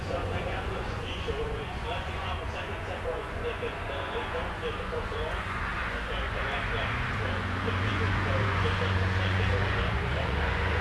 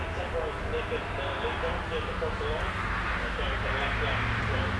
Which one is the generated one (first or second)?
first